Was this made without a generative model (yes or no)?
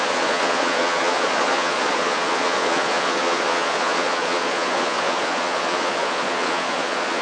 no